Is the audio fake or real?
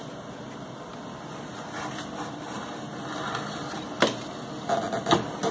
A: real